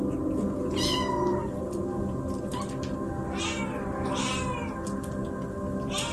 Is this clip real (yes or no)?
yes